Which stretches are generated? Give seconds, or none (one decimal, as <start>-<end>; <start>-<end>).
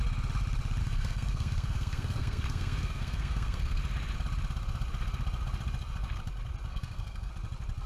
0.8-3.8; 6.7-7.3